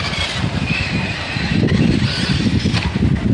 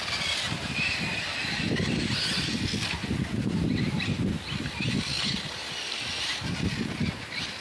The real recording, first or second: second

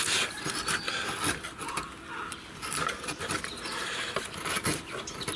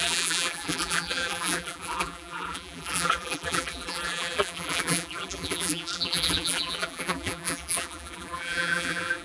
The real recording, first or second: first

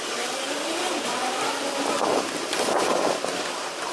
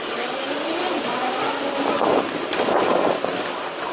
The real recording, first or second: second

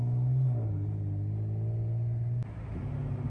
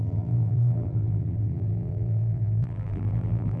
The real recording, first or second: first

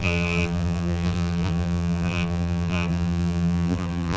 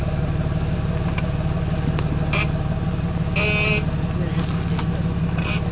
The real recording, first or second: second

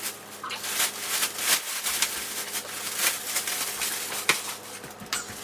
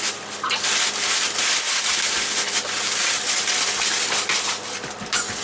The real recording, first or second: first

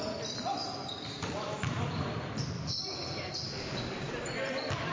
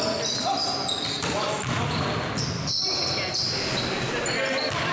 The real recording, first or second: second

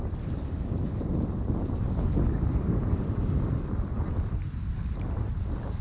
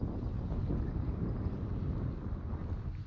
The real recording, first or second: second